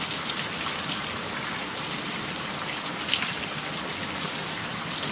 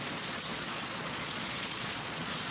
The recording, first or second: first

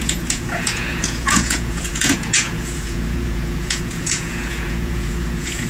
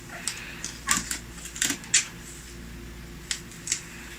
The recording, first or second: second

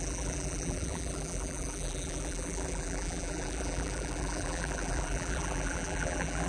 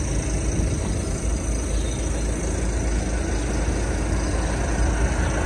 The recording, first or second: second